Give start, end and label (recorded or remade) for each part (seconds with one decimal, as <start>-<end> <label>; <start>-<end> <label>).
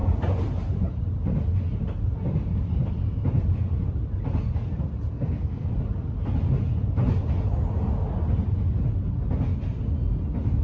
0.0-5.1 recorded; 5.1-5.7 remade; 5.7-10.6 recorded